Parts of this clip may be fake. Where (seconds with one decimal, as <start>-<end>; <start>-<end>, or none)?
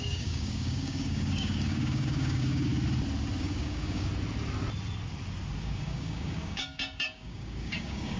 0.0-2.7; 3.4-4.1; 5.6-8.2